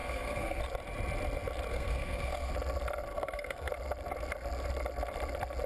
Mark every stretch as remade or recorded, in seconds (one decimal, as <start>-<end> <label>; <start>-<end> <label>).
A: 0.0-0.6 remade; 0.6-1.7 recorded; 1.7-2.5 remade; 2.5-3.1 recorded; 3.1-3.7 remade; 3.7-5.7 recorded